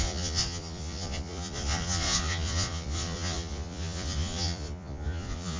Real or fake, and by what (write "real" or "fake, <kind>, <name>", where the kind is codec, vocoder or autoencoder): fake, vocoder, Vocos